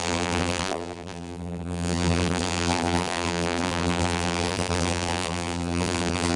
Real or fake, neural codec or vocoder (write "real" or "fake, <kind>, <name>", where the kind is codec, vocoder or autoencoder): fake, vocoder, BigVGAN v2